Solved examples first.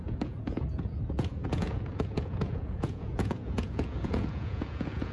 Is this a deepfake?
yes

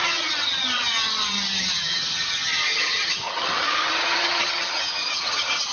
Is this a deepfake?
yes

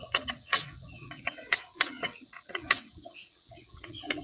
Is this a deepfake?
yes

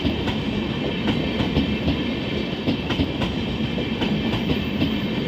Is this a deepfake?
yes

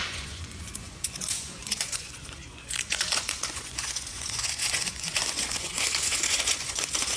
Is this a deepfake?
yes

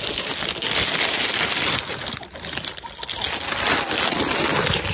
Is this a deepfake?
no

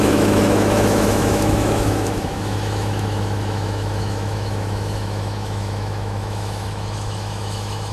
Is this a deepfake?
yes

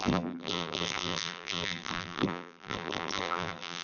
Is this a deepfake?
yes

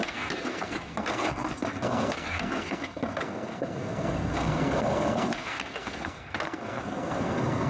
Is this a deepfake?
yes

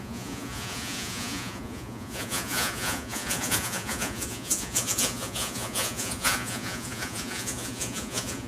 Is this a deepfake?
yes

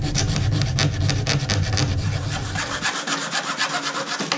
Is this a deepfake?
no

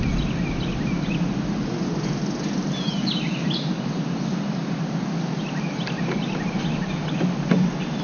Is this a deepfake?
no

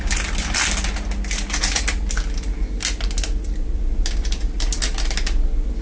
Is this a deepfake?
no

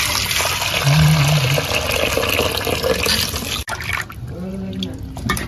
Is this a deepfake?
no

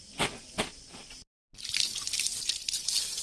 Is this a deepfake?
no